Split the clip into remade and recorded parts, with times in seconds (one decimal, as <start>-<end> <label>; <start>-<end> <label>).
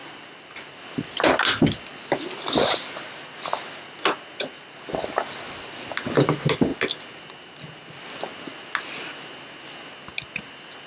0.0-1.0 remade; 1.0-10.9 recorded